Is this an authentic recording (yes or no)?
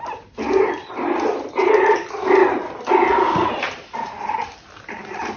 yes